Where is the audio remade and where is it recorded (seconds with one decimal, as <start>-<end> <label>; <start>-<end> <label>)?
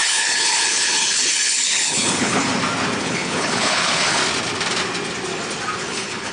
0.0-2.5 remade; 2.5-3.0 recorded; 3.0-4.2 remade; 4.2-5.8 recorded; 5.8-6.3 remade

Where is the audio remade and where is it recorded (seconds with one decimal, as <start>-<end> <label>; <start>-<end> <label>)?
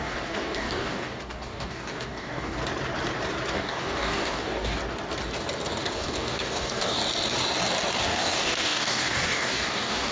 0.0-2.6 remade; 2.6-3.5 recorded; 3.5-4.8 remade; 4.8-5.8 recorded; 5.8-7.0 remade; 7.0-8.0 recorded; 8.0-10.1 remade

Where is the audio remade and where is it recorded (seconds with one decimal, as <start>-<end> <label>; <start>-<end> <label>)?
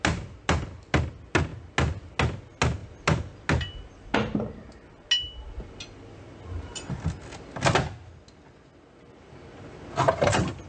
0.0-10.7 recorded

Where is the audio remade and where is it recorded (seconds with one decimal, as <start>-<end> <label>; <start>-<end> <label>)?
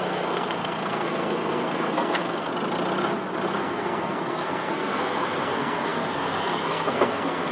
0.0-2.5 remade; 2.5-3.6 recorded; 3.6-7.5 remade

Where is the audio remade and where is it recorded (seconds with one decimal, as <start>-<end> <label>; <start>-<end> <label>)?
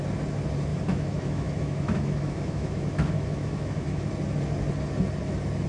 0.0-0.7 recorded; 0.7-4.0 remade; 4.0-5.7 recorded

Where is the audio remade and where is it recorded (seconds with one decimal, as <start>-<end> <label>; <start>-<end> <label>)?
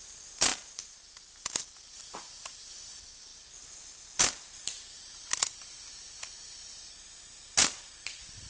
0.0-8.5 recorded